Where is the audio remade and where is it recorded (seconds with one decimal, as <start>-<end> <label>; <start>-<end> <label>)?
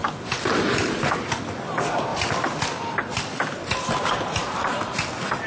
0.0-5.5 recorded